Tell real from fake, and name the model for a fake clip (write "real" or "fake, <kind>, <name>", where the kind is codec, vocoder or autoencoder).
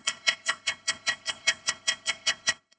fake, codec, ZipCodec